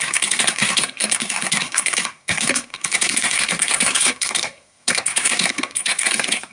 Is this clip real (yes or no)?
no